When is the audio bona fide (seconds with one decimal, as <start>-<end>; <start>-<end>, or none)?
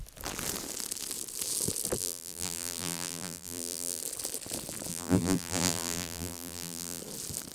0.0-2.0; 4.0-4.9; 7.0-7.5